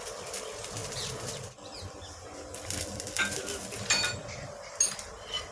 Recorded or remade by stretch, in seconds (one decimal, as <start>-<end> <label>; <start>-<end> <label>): 0.0-5.5 recorded